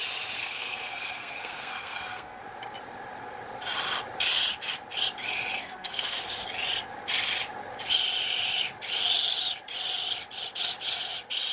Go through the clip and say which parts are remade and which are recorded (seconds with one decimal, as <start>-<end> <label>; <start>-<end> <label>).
0.0-0.4 recorded; 0.4-2.4 remade; 2.4-5.6 recorded; 5.6-6.2 remade; 6.2-11.5 recorded